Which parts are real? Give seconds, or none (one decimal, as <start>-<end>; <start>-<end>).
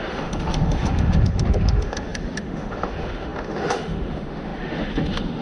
none